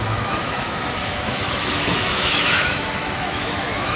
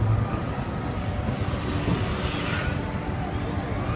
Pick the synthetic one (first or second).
first